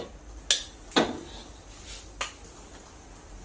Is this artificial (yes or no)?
no